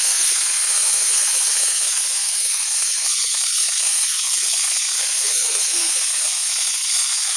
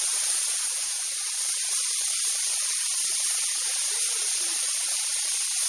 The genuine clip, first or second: second